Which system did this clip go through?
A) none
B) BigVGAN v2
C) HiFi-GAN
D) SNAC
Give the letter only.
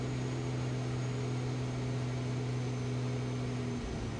A